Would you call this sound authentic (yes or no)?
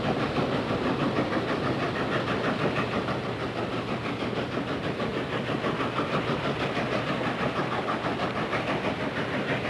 yes